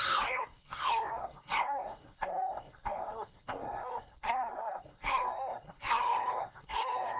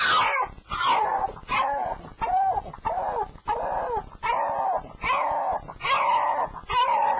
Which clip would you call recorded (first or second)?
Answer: second